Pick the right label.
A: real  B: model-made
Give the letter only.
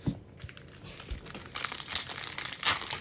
A